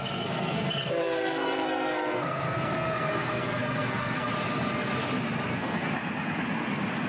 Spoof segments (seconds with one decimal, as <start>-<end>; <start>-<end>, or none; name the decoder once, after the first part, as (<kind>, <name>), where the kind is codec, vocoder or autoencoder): 0.0-4.3 (codec, SNAC); 5.5-5.9